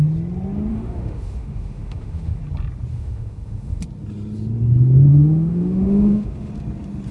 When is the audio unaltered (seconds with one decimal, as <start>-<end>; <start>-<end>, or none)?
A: 0.0-0.7; 2.4-2.9; 3.8-5.1; 6.5-7.1